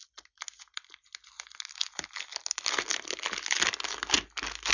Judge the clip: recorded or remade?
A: recorded